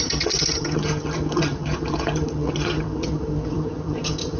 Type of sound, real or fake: fake